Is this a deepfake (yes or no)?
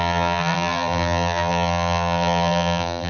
yes